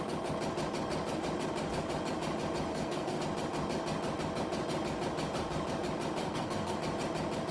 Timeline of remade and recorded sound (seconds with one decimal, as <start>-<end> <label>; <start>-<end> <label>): 0.0-2.7 recorded; 2.7-3.2 remade; 3.2-6.2 recorded; 6.2-6.8 remade; 6.8-7.5 recorded